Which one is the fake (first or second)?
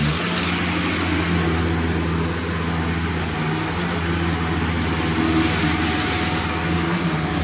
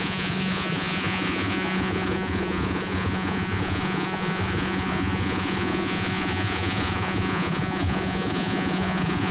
second